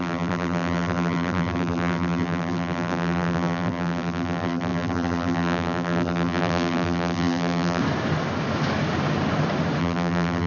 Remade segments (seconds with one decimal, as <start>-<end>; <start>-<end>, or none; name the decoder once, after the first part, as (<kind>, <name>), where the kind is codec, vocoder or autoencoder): 0.0-7.8 (vocoder, BigVGAN v2); 9.8-10.5